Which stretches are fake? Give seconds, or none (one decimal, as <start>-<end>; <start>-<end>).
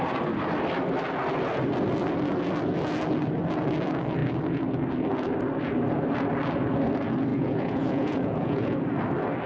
7.3-8.8